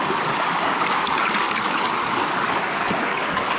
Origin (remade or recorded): remade